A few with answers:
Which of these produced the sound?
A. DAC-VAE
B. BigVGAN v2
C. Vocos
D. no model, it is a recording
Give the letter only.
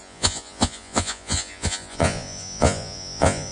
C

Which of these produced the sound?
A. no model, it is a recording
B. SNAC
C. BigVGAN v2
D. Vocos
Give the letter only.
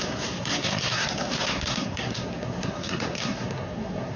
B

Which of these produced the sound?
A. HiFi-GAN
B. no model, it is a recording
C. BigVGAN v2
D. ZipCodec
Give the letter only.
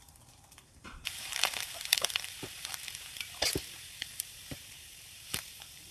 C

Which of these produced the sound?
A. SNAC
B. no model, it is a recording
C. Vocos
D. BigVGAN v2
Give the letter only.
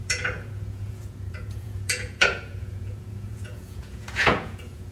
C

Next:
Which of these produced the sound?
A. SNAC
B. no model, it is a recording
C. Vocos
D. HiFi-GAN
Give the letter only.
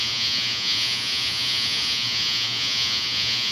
C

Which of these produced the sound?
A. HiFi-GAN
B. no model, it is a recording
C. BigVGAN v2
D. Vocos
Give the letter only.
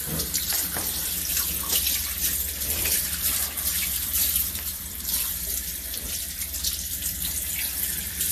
C